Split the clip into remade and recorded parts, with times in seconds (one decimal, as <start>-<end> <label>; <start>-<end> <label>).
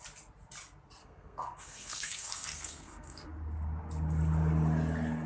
0.0-1.0 recorded; 1.0-3.3 remade; 3.3-5.3 recorded